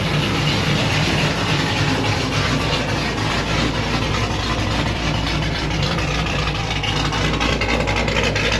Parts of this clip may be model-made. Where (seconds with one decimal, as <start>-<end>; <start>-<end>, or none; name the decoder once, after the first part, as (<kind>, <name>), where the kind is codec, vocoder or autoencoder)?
4.2-6.6 (vocoder, BigVGAN v2)